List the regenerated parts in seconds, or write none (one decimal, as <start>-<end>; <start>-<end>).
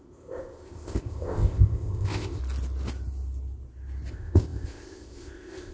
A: 0.0-2.4; 4.1-5.7